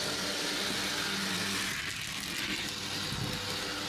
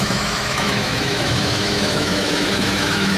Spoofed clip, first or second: second